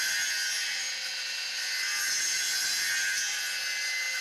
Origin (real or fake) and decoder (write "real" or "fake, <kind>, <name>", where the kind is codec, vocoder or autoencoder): real